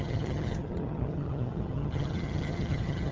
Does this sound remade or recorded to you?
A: remade